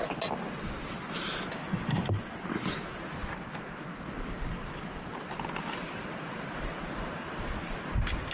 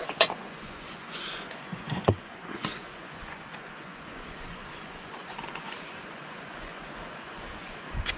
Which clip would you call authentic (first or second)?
first